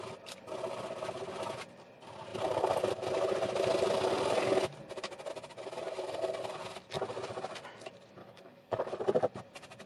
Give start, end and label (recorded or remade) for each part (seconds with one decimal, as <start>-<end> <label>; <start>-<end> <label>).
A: 0.0-8.2 recorded; 8.2-8.9 remade; 8.9-9.9 recorded